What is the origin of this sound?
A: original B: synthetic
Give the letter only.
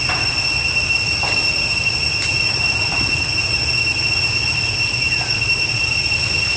A